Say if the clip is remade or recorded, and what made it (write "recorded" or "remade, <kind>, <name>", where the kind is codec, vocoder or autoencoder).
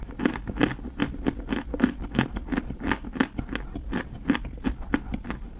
recorded